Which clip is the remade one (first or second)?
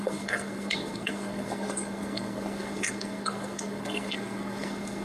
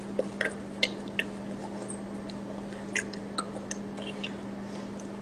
first